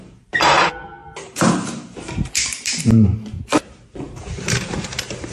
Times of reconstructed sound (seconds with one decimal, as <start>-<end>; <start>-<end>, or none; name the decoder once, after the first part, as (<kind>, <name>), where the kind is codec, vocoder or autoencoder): 0.0-5.3 (vocoder, BigVGAN v2)